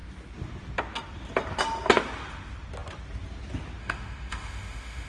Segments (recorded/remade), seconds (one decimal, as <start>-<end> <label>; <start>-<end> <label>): 0.0-3.8 recorded; 3.8-5.1 remade